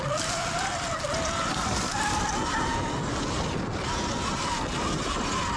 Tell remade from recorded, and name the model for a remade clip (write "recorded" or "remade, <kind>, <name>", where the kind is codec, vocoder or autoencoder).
recorded